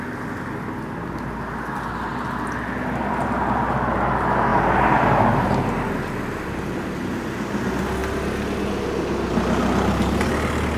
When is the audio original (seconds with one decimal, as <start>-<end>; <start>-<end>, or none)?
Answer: 0.0-4.5; 5.6-10.8